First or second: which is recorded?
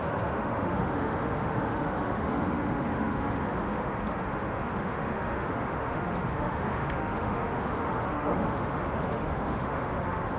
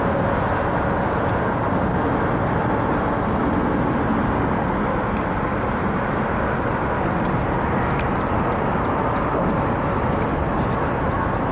second